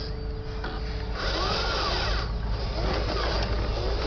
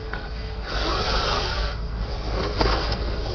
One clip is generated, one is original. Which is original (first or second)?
first